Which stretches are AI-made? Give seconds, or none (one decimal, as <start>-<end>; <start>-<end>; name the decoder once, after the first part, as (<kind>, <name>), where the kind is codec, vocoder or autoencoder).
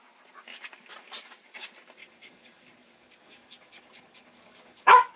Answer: 2.0-5.2 (codec, DAC)